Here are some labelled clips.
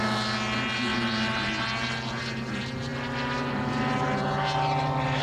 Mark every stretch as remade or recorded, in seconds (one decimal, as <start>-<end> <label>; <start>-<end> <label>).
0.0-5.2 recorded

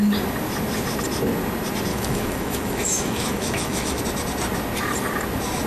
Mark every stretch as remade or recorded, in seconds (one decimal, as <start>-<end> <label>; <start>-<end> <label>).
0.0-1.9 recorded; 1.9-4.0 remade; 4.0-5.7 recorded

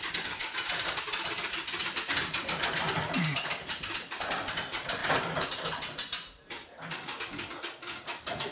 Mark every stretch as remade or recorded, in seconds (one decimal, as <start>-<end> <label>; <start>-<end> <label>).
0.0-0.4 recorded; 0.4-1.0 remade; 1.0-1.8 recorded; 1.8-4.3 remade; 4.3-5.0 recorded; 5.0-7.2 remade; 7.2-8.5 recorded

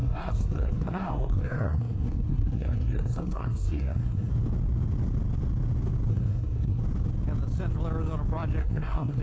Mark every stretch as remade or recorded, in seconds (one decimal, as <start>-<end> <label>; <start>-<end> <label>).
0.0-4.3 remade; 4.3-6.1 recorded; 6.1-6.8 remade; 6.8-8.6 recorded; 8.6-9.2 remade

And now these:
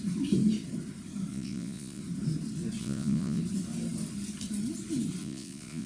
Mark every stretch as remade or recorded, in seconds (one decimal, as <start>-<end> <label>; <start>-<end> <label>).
0.0-1.3 recorded; 1.3-2.0 remade; 2.0-2.8 recorded; 2.8-3.4 remade; 3.4-5.2 recorded; 5.2-5.9 remade